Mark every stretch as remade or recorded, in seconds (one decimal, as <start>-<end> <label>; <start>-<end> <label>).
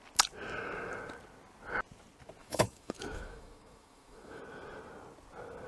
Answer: 0.0-2.4 recorded; 2.4-4.4 remade; 4.4-5.7 recorded